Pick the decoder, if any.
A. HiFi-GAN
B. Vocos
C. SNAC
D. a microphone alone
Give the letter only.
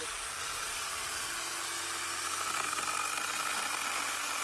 D